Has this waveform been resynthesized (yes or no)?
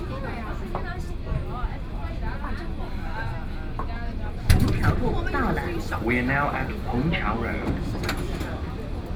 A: no